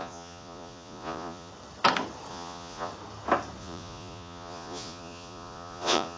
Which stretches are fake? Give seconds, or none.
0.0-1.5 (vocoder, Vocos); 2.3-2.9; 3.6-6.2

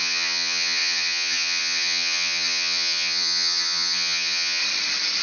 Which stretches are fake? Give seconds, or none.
0.0-4.6 (vocoder, HiFi-GAN)

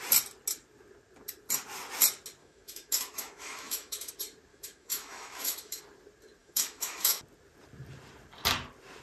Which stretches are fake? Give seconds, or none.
2.4-4.1 (autoencoder, DAC-VAE); 4.5-5.8; 6.4-7.2

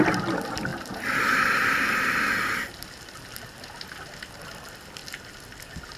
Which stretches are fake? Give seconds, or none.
none

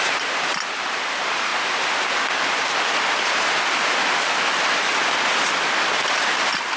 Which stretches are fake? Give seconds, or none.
none

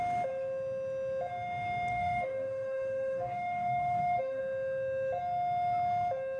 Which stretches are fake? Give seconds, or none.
1.9-4.4 (codec, DAC)

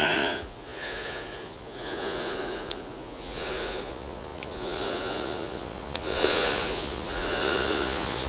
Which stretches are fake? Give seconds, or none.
0.0-8.3 (vocoder, Vocos)